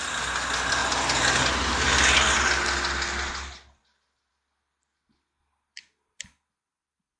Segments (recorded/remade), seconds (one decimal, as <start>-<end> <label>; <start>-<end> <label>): 0.0-7.2 recorded